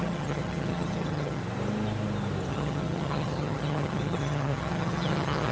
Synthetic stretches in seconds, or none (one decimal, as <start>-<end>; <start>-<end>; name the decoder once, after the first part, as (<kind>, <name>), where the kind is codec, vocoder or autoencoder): 0.0-1.4 (vocoder, HiFi-GAN); 2.5-5.5